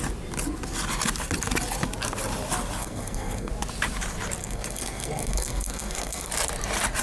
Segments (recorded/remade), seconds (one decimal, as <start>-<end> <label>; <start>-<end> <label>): 0.0-2.8 recorded; 2.8-3.5 remade; 3.5-4.4 recorded; 4.4-6.3 remade; 6.3-7.0 recorded